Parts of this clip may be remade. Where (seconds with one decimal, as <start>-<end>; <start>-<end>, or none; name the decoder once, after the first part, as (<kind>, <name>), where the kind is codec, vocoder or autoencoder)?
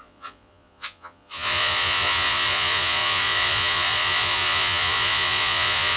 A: 0.0-6.0 (vocoder, Vocos)